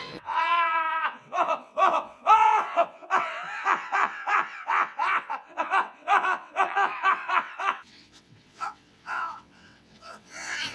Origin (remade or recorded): remade